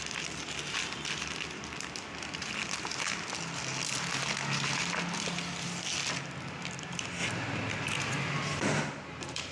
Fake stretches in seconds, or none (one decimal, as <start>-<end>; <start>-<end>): none